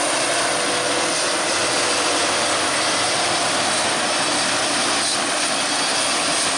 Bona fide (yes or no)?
yes